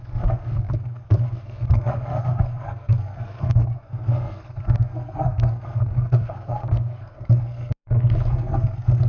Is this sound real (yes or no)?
no